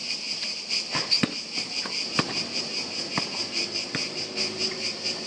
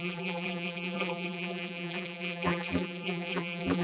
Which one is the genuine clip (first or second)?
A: first